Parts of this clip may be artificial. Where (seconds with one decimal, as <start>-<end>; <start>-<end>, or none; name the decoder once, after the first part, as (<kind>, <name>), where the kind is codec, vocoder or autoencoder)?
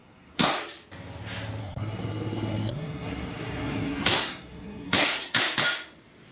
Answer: 0.0-0.6 (codec, SNAC); 1.6-5.4